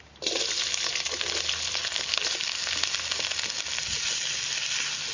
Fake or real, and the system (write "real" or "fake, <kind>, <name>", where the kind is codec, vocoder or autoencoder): real